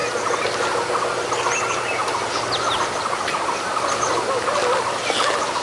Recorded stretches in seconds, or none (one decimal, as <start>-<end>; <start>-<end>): 0.0-5.6